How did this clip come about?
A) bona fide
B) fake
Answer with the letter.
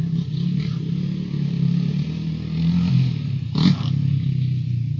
A